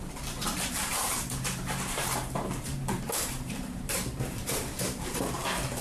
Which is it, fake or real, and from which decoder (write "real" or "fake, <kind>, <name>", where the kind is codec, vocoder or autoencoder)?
fake, vocoder, BigVGAN v2